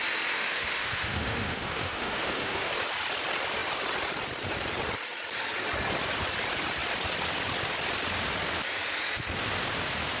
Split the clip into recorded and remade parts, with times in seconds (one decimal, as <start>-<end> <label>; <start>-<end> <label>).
0.0-0.4 recorded; 0.4-2.7 remade; 2.7-10.2 recorded